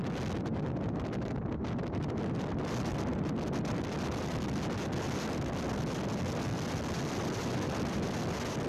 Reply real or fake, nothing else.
real